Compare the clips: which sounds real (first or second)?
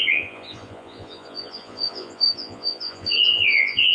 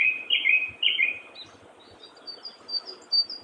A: second